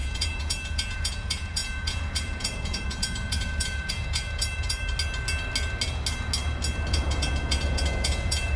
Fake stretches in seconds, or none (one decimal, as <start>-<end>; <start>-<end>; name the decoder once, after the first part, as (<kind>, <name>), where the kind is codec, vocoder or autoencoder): 0.0-4.8 (vocoder, Vocos); 6.9-8.6